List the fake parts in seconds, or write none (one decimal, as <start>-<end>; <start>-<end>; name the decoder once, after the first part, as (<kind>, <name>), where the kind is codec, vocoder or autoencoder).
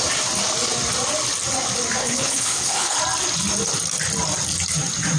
2.0-3.0 (codec, HILCodec)